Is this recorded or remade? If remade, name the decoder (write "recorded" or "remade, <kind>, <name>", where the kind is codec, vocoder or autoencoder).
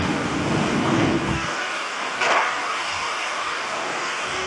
remade, codec, DAC